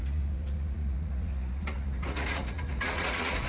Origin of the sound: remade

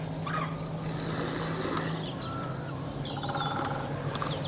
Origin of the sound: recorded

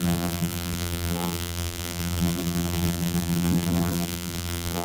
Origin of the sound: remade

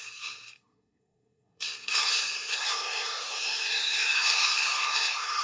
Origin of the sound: remade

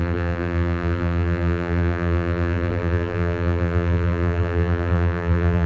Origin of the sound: remade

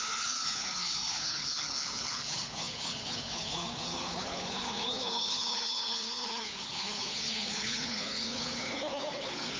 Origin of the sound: remade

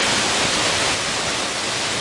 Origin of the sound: recorded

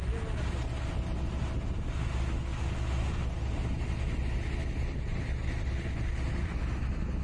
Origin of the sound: recorded